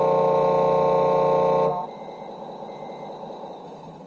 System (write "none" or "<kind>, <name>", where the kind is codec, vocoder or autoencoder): none